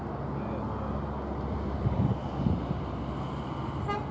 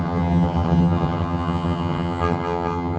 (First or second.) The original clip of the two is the first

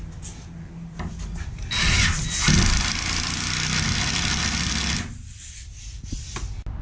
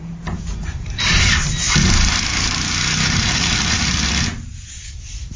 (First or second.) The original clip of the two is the first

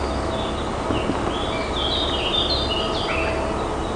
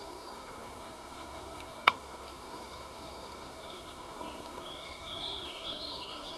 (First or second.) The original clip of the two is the first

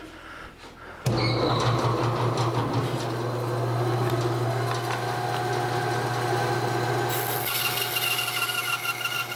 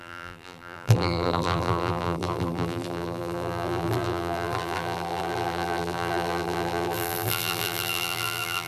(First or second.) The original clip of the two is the first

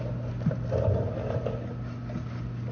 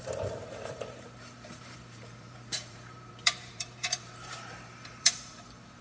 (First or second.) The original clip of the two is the first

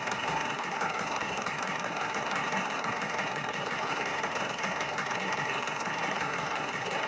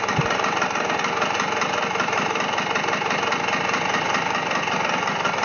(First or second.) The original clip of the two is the second